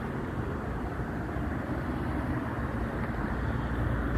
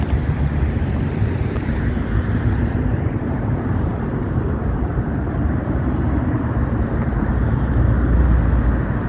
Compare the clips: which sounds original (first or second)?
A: first